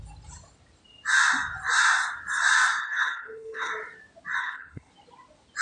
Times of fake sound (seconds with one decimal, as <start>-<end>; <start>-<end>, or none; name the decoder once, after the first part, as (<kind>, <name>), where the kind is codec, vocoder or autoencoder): 2.8-3.7 (codec, HILCodec); 4.4-4.9